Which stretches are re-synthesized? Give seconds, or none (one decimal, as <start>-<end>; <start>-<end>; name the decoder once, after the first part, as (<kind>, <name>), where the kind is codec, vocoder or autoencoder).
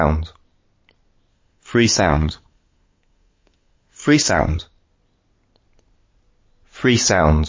1.3-4.6 (codec, SNAC)